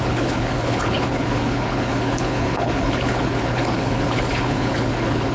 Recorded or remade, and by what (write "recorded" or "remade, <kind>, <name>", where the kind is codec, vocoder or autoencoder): remade, codec, HILCodec